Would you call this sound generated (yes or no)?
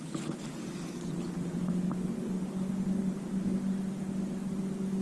no